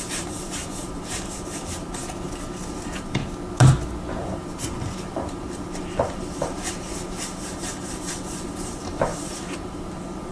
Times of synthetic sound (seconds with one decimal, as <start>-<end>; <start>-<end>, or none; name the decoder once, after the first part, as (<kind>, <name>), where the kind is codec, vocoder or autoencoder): 0.0-2.0 (vocoder, BigVGAN v2); 2.7-3.2; 4.2-10.3